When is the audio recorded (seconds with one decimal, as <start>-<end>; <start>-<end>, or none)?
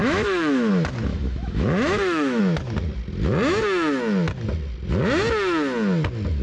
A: 0.7-1.1; 2.4-6.4